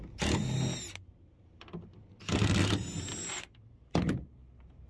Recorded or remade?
recorded